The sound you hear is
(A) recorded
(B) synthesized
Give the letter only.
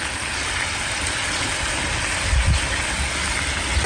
A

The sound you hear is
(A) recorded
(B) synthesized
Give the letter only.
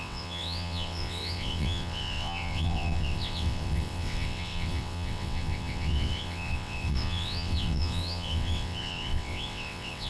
B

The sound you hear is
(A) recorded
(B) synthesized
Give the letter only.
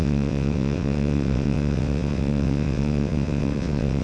B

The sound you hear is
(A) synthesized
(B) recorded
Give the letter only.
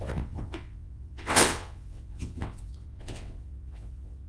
A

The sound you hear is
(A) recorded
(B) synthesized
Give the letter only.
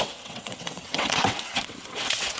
B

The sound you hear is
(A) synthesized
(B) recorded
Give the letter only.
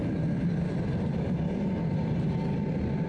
B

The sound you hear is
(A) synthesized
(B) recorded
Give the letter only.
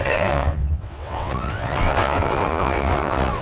A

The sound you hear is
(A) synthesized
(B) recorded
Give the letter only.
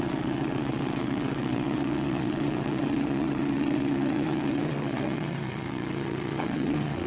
A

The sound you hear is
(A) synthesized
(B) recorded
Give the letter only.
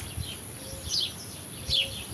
B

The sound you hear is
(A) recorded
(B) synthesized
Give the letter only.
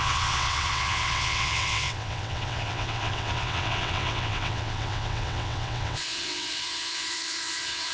B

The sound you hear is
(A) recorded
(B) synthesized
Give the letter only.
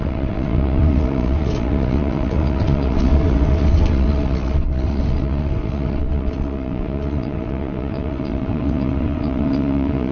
B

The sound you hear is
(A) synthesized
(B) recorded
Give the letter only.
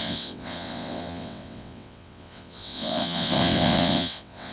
A